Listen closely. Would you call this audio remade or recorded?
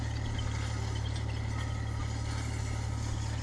recorded